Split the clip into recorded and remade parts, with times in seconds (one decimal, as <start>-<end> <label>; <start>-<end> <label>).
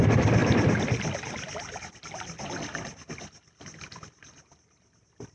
0.0-5.3 recorded